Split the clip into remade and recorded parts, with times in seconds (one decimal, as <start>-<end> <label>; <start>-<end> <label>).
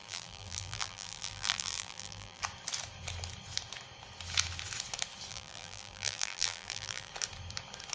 0.0-2.4 remade; 2.4-5.3 recorded; 5.3-7.1 remade; 7.1-7.9 recorded